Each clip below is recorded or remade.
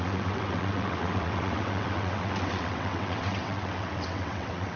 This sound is remade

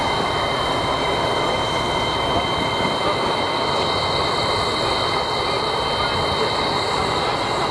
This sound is recorded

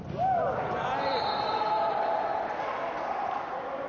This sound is recorded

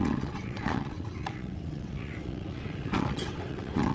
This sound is remade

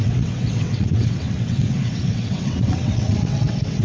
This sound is remade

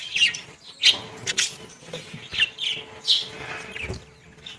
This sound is recorded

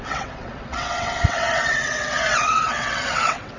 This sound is remade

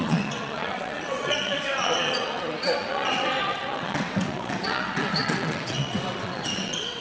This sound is remade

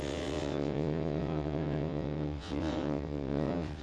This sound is remade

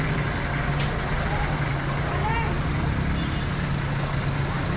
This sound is recorded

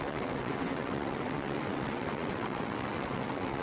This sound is remade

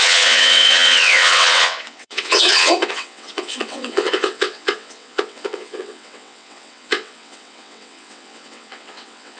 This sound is remade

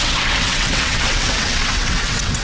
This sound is remade